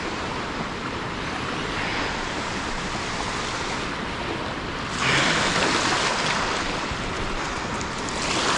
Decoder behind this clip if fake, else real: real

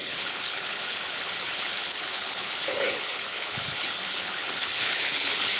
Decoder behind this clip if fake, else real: fake, codec, HILCodec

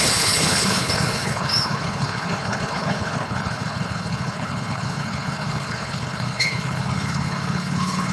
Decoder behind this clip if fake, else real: fake, codec, HILCodec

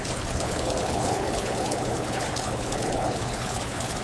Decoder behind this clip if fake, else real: fake, codec, HILCodec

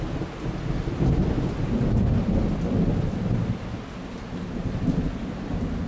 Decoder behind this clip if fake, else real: real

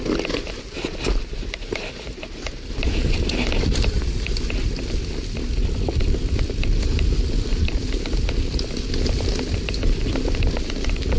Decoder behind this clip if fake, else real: real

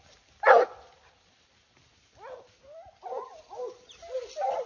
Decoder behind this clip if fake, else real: real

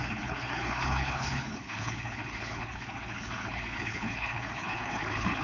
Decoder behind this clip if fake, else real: fake, codec, HILCodec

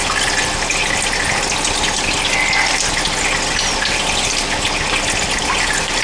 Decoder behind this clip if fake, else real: real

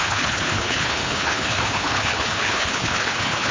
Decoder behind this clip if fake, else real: fake, codec, HILCodec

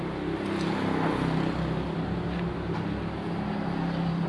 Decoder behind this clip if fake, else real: real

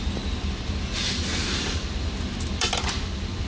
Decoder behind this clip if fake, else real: real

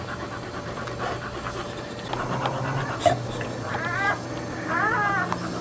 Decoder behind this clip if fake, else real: real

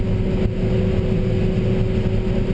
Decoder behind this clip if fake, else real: real